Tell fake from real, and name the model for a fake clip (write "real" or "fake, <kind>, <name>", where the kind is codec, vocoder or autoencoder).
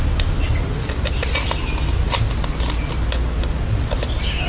real